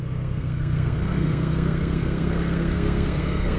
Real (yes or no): no